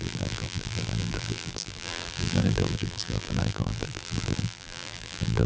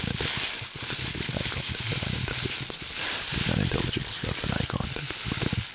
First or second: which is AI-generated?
first